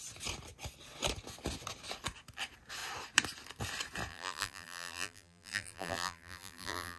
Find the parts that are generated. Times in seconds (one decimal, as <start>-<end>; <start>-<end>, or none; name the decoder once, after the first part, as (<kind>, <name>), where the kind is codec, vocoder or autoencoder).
4.1-7.0 (vocoder, BigVGAN v2)